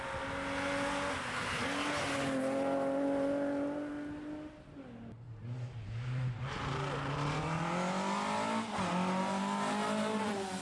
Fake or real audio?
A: real